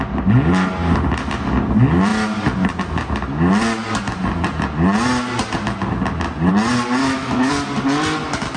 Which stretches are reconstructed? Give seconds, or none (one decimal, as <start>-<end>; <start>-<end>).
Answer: 7.0-7.5